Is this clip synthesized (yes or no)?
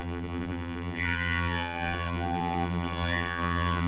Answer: yes